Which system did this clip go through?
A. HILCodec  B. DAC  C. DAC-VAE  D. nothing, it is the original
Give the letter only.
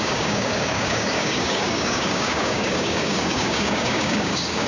B